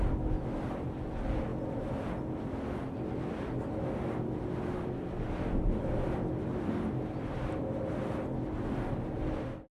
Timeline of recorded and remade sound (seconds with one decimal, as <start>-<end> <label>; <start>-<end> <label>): 0.0-9.7 recorded